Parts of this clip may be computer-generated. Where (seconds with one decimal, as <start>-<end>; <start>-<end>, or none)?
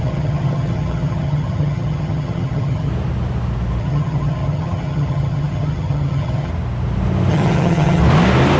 0.0-2.9; 3.8-6.5; 7.3-8.0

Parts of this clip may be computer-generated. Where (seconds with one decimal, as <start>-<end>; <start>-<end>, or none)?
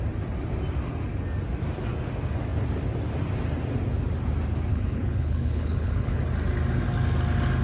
4.7-6.2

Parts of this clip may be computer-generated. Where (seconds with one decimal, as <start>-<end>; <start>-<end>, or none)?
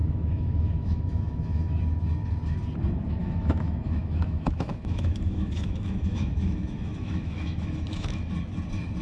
0.0-1.8; 3.2-8.3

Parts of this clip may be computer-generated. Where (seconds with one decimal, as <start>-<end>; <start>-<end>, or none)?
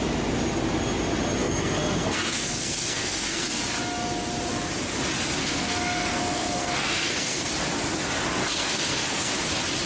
1.4-3.6; 5.4-7.5; 8.4-9.3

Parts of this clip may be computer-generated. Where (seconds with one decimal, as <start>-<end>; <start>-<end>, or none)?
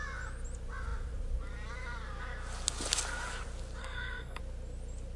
3.8-4.4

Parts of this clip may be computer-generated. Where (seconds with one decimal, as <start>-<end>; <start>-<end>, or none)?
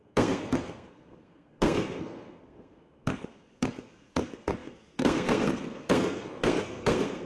0.0-7.3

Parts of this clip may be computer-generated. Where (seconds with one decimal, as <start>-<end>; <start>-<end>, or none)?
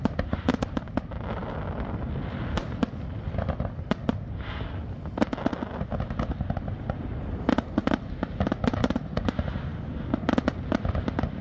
none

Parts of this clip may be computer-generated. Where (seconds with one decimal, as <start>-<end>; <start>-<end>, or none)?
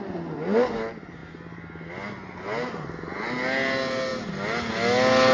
none